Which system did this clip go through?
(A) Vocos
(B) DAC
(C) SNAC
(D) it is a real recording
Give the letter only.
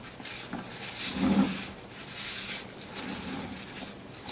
D